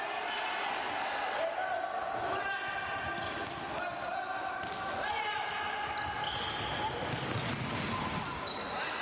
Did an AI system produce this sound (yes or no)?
no